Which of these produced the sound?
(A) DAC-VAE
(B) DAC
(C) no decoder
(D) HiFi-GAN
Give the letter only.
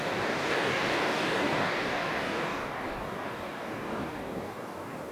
B